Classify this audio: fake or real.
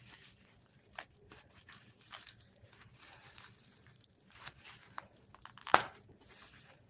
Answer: fake